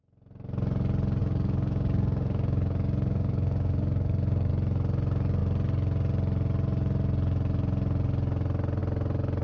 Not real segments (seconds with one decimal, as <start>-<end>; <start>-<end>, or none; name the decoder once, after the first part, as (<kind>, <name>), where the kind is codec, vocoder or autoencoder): 1.2-4.5 (codec, DAC)